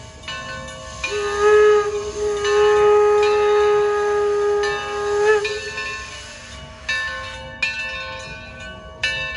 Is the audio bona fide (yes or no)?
yes